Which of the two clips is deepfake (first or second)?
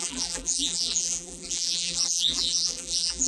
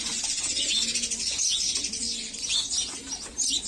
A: first